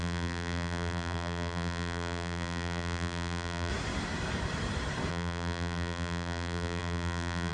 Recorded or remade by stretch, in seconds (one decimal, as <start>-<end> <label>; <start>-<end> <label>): 0.0-3.7 remade; 3.7-5.1 recorded; 5.1-7.5 remade